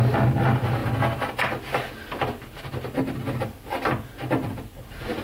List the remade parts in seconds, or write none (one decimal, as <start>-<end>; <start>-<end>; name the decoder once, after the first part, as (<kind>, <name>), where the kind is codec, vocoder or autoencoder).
none